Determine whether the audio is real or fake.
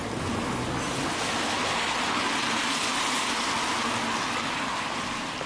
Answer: real